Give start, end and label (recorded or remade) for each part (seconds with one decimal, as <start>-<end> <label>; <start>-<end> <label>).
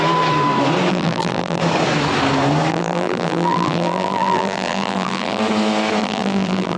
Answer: 0.0-0.9 recorded; 0.9-1.6 remade; 1.6-2.7 recorded; 2.7-5.4 remade; 5.4-6.0 recorded; 6.0-6.8 remade